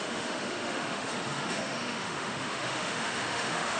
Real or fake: fake